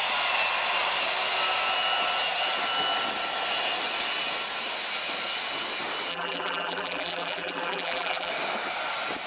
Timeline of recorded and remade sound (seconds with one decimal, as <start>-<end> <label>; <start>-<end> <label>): 0.0-6.1 recorded; 6.1-8.3 remade; 8.3-9.3 recorded